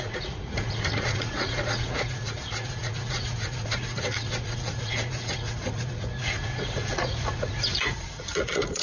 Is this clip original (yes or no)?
no